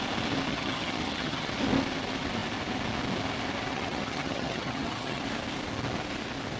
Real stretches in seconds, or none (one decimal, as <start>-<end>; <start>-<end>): 0.0-0.5; 1.5-3.7; 5.2-6.6